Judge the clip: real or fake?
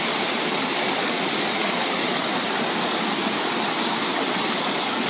real